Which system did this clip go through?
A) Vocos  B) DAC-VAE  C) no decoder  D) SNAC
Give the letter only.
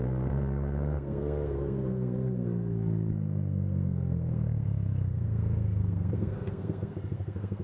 D